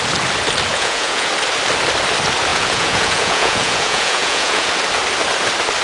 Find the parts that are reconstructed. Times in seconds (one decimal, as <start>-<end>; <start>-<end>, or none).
0.7-1.3; 2.5-4.7